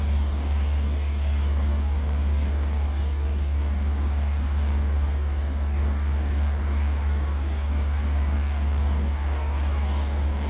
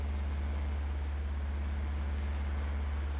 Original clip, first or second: second